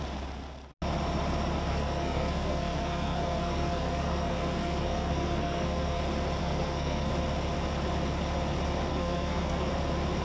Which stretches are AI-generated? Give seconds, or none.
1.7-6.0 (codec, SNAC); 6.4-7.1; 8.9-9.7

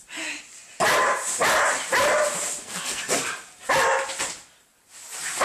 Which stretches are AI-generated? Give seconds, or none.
2.6-3.2 (codec, SNAC)